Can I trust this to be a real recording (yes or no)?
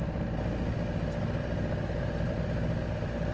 yes